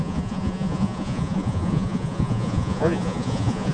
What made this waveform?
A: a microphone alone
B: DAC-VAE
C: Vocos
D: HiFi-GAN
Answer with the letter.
C